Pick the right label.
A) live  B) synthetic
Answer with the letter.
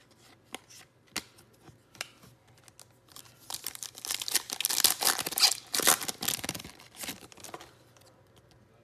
A